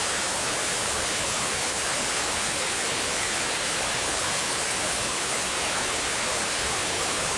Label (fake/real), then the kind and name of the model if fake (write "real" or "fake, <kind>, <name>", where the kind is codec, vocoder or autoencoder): fake, codec, HILCodec